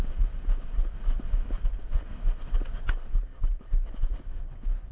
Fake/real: real